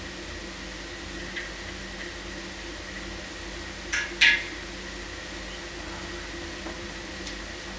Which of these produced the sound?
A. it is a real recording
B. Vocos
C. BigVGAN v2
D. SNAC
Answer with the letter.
A